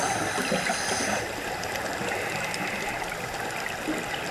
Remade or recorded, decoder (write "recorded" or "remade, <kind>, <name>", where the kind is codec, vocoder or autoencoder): recorded